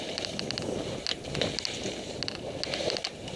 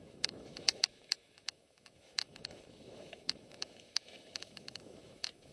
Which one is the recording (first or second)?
first